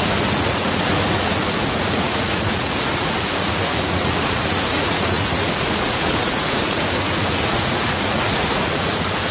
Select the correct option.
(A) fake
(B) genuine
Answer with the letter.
A